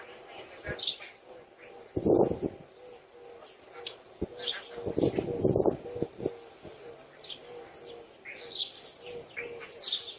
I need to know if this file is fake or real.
real